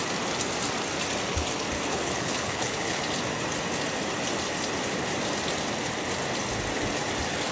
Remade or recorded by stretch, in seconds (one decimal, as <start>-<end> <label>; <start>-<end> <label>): 0.0-1.9 recorded; 1.9-3.0 remade; 3.0-7.5 recorded